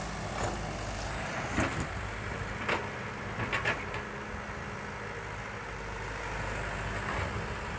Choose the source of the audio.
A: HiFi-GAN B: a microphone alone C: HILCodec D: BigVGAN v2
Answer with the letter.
B